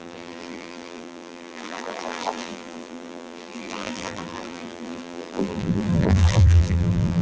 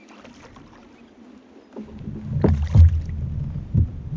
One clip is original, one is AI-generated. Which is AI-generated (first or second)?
first